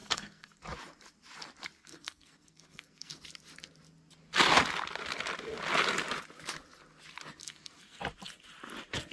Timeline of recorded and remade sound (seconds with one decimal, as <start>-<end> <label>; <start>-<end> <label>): 0.0-0.6 remade; 0.6-1.8 recorded; 1.8-3.2 remade; 3.2-7.4 recorded; 7.4-8.0 remade; 8.0-9.1 recorded